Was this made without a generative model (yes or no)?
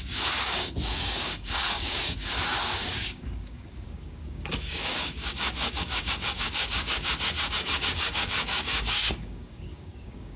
no